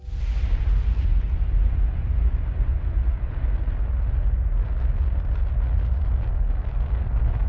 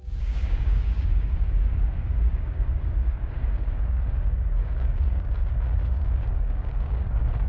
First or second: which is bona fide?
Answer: first